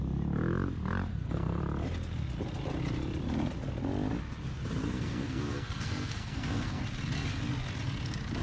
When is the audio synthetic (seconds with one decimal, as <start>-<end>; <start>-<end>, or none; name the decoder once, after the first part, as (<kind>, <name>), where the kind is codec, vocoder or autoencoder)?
1.1-1.6 (codec, SNAC); 4.8-6.8